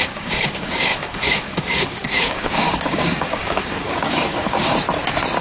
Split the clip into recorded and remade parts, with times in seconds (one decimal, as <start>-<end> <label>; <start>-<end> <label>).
0.0-4.6 remade; 4.6-5.4 recorded